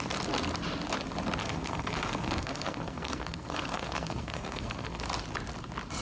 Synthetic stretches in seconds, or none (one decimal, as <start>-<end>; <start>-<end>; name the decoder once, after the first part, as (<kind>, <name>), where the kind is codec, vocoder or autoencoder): 1.4-5.0 (codec, SNAC)